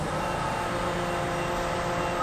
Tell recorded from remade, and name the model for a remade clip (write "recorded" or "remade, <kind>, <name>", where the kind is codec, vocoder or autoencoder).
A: recorded